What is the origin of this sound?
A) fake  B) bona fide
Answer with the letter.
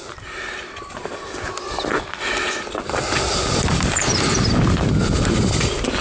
B